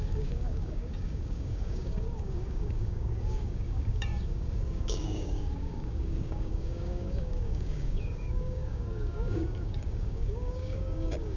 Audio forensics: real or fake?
fake